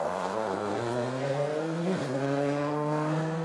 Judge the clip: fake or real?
fake